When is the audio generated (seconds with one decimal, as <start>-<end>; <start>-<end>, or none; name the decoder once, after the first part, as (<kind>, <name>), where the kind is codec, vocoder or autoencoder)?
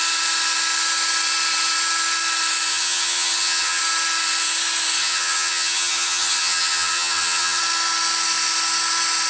2.7-3.8 (vocoder, HiFi-GAN); 5.0-7.6